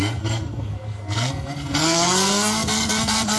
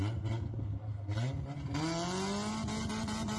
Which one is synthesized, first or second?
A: first